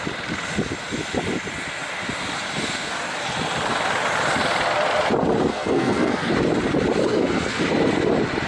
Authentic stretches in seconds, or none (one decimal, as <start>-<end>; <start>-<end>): 0.0-5.5; 6.3-7.0; 7.6-8.5

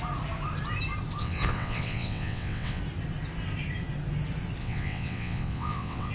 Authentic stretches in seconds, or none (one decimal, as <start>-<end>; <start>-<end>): 0.0-1.2; 2.8-4.6

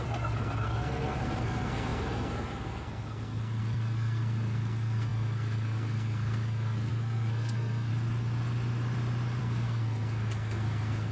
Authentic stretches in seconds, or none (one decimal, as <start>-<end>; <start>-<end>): 7.9-9.4

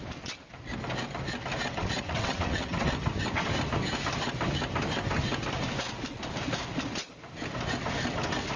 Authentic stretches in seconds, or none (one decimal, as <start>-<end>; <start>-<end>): 0.0-1.6; 2.9-8.6